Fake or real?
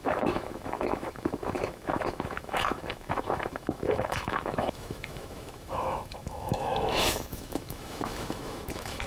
fake